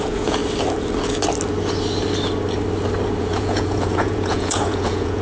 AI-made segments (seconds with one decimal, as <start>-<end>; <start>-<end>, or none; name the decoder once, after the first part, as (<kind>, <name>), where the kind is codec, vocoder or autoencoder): 0.0-0.4 (vocoder, Vocos); 3.2-5.2